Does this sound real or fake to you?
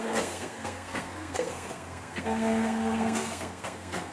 fake